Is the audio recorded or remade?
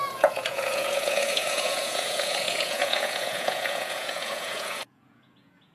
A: remade